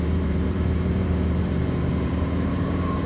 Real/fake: fake